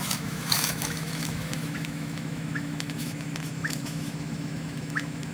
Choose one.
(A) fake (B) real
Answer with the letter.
A